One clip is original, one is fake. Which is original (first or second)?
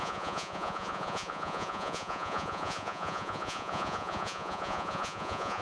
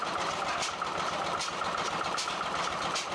second